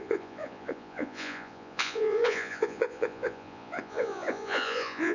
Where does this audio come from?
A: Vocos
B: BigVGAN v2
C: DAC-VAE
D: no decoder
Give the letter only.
A